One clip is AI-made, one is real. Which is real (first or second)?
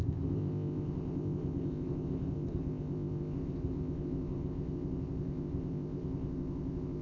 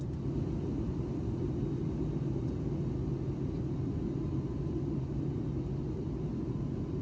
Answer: second